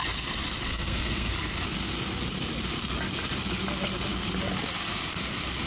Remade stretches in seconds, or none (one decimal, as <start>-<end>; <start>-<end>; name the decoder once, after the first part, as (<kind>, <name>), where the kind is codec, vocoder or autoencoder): 0.7-1.3 (codec, SNAC)